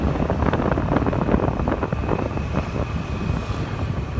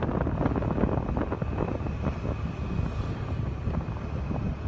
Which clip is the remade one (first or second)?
first